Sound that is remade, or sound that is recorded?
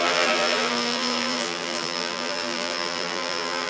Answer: remade